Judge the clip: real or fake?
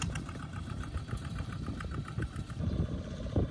real